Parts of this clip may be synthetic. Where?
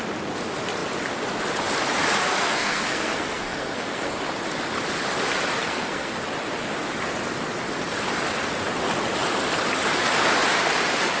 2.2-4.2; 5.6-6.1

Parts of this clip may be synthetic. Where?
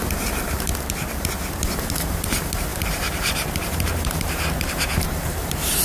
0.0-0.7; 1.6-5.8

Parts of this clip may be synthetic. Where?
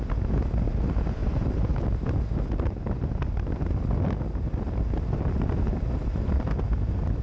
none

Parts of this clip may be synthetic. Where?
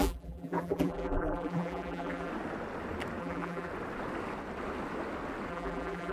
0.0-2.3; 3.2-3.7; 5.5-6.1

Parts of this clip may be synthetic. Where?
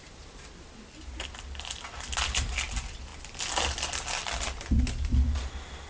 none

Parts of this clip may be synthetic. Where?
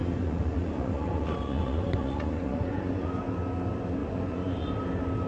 0.0-3.2; 4.0-4.7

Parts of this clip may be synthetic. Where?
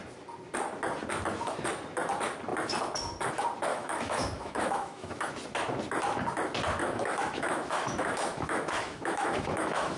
3.7-5.3; 6.8-10.0